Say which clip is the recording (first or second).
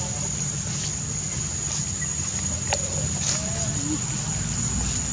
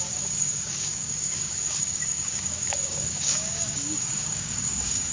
first